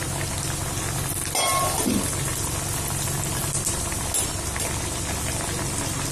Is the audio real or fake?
real